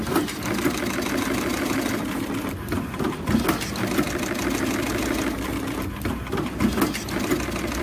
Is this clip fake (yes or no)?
no